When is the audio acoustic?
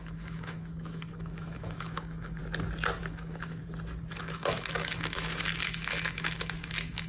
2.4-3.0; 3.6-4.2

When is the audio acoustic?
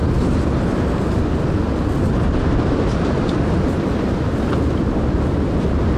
0.0-6.0